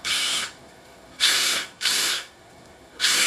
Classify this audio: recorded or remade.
remade